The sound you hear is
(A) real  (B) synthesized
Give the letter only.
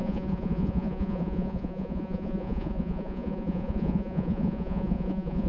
B